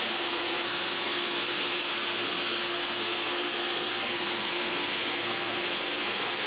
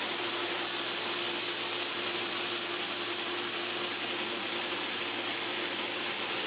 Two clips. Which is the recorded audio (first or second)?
second